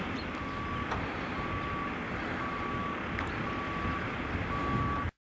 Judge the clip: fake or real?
real